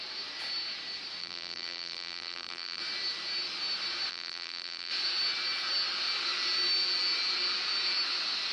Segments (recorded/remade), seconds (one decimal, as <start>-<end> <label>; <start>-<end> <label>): 0.0-1.2 recorded; 1.2-2.8 remade; 2.8-4.1 recorded; 4.1-4.9 remade; 4.9-8.5 recorded